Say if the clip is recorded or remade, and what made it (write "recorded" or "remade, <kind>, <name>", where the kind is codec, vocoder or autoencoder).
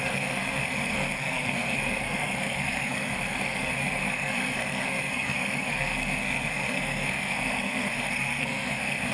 remade, codec, SNAC